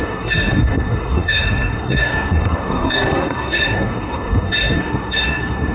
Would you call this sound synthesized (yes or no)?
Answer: yes